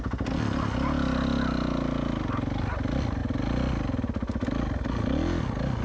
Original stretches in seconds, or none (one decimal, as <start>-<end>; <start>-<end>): 0.0-5.8